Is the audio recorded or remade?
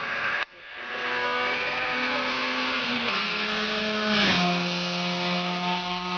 remade